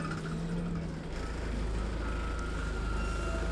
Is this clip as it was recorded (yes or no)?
yes